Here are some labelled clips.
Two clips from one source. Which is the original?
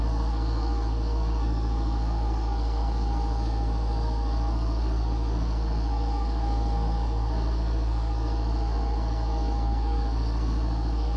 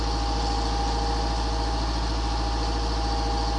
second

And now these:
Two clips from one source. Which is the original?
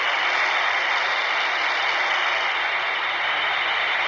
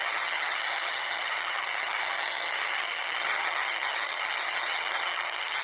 first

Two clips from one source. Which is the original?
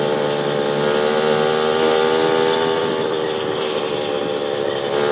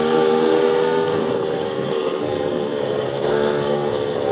first